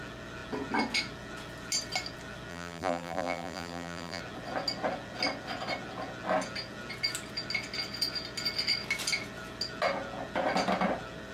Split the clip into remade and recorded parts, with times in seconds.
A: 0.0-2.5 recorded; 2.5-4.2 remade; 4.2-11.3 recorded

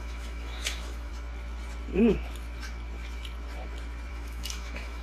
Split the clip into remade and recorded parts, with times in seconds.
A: 0.0-1.1 remade; 1.1-4.1 recorded; 4.1-5.0 remade